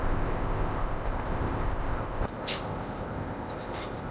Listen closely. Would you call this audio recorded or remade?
remade